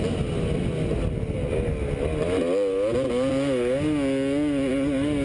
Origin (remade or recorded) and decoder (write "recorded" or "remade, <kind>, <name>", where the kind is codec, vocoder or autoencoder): recorded